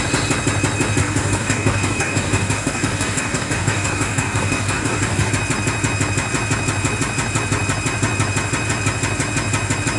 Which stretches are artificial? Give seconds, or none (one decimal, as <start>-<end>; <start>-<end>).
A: 1.0-5.3